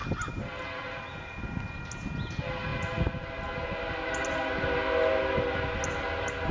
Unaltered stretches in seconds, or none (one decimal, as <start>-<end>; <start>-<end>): 0.0-6.5